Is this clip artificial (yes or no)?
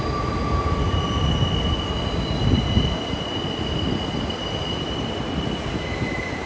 no